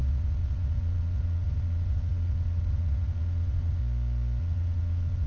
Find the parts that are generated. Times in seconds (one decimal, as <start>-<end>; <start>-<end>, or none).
0.0-3.8; 4.4-5.3